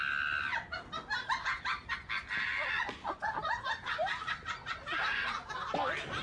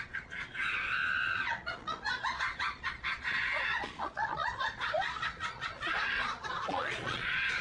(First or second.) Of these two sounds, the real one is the first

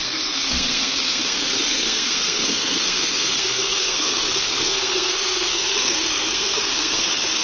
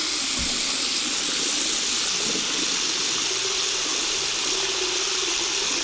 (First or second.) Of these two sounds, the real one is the second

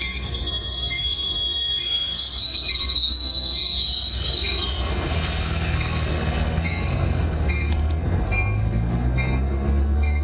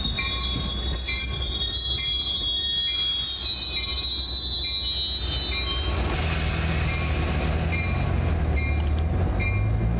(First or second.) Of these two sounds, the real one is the second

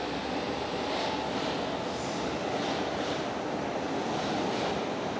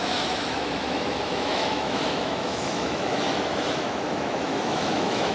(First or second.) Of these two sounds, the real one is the first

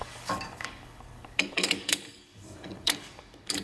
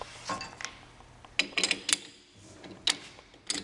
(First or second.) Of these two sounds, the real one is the second